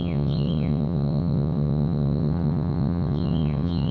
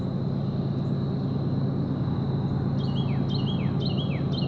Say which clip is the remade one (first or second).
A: first